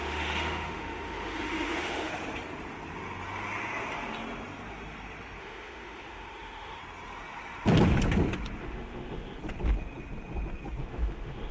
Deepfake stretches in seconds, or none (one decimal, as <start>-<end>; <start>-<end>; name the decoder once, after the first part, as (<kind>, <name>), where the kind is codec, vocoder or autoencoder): 0.0-2.1 (autoencoder, DAC-VAE); 5.4-6.8; 8.6-9.4; 10.8-11.5